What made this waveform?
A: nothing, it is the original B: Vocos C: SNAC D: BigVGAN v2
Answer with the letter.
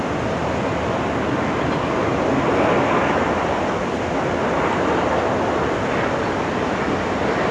A